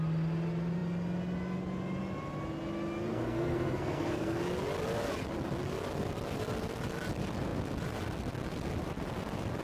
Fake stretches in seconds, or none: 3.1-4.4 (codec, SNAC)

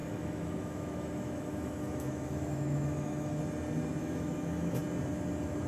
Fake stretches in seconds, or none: 0.0-3.4 (autoencoder, DAC-VAE); 4.0-4.8

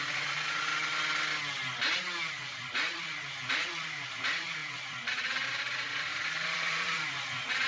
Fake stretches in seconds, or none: 0.0-0.7 (vocoder, Vocos); 2.3-7.7